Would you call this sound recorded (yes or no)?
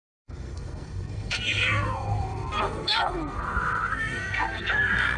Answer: no